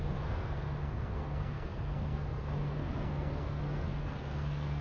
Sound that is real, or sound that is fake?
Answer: fake